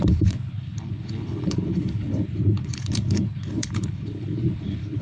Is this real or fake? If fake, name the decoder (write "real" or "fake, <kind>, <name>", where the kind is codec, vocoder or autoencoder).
fake, codec, HILCodec